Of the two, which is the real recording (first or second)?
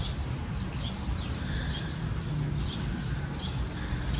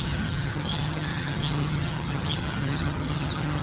first